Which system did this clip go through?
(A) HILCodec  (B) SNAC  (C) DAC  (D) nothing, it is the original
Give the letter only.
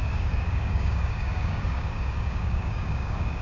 C